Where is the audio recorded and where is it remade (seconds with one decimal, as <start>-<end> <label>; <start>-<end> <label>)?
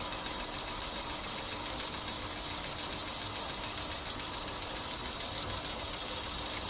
0.0-6.7 recorded